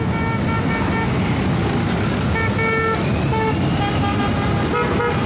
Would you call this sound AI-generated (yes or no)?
no